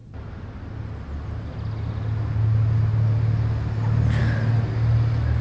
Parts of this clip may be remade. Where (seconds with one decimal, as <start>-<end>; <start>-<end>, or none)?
none